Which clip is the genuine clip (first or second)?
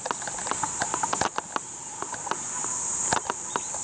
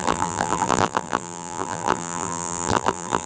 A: first